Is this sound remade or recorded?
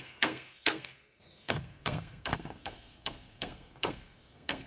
remade